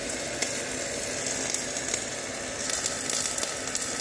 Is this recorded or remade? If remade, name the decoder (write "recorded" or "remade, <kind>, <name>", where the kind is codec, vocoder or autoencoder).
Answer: recorded